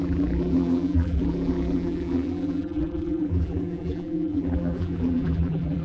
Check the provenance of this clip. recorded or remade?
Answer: remade